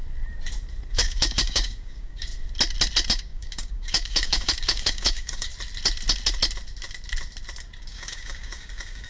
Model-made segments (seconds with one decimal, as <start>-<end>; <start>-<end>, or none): 0.9-2.3; 3.1-5.5; 7.8-9.1